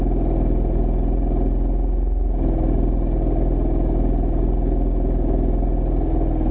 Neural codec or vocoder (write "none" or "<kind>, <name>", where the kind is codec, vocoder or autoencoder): none